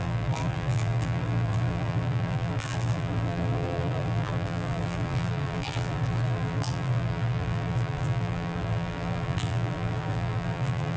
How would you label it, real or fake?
fake